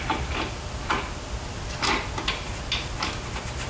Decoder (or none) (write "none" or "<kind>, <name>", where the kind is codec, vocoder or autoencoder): none